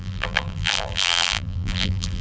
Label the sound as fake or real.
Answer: fake